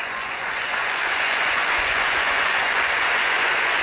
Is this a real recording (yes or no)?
no